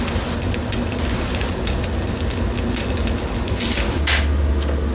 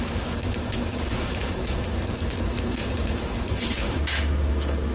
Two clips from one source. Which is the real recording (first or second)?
first